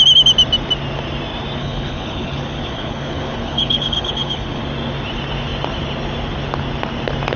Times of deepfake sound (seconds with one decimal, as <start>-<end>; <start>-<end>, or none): 1.6-4.6